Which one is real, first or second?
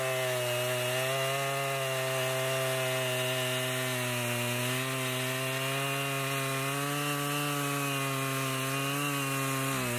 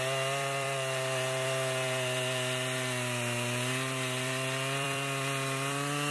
first